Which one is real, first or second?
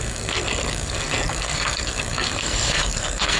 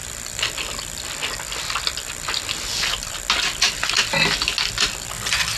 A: second